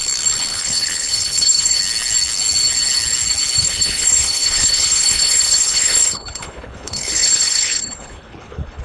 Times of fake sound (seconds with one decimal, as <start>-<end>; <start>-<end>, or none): 0.5-1.8; 3.6-8.8